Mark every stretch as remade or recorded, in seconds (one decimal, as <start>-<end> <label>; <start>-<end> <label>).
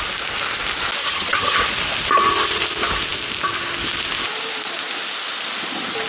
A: 0.0-1.0 recorded; 1.0-1.6 remade; 1.6-6.1 recorded